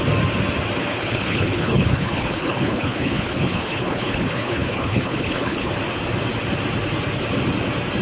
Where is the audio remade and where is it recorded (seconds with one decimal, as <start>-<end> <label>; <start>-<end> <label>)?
0.0-0.9 recorded; 0.9-5.7 remade; 5.7-8.0 recorded